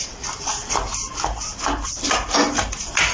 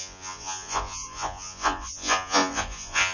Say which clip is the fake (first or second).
second